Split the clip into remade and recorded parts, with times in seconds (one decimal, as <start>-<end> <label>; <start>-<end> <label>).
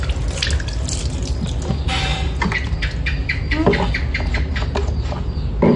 0.0-5.8 recorded